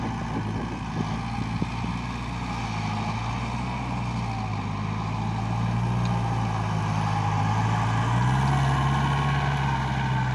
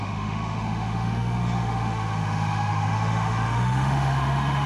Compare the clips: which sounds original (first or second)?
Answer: first